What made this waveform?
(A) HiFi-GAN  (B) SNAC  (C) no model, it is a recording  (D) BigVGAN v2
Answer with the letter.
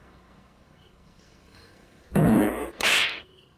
B